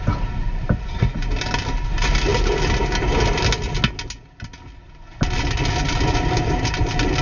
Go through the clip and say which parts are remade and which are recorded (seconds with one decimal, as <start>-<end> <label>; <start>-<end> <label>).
0.0-7.2 recorded